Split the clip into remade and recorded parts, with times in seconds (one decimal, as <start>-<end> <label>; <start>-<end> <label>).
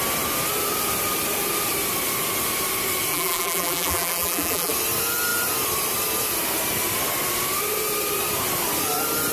0.0-3.1 recorded; 3.1-4.7 remade; 4.7-9.3 recorded